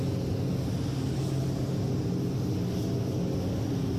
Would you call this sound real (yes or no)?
yes